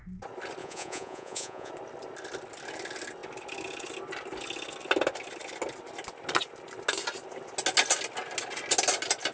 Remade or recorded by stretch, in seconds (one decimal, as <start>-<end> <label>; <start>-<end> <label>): 0.0-0.6 recorded; 0.6-1.7 remade; 1.7-9.3 recorded